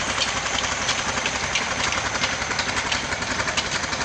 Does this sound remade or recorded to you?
recorded